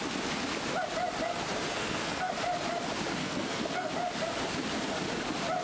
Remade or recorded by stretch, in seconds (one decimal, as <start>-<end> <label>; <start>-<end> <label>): 0.0-1.7 recorded; 1.7-2.3 remade; 2.3-3.2 recorded; 3.2-3.9 remade; 3.9-5.6 recorded